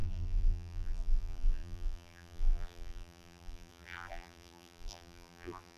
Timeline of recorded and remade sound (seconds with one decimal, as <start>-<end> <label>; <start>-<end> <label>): 0.0-5.8 remade